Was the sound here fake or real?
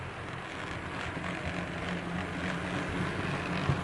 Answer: real